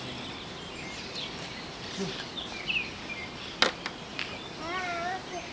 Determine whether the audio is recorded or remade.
recorded